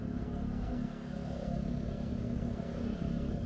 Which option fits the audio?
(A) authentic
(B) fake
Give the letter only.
B